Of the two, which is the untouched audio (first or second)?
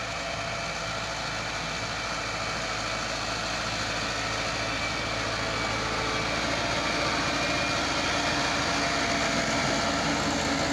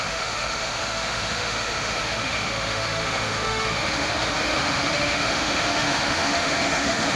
first